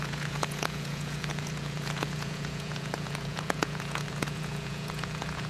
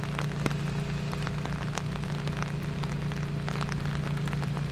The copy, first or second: first